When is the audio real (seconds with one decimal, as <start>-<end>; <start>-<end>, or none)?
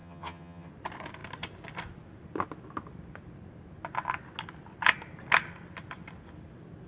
0.7-6.9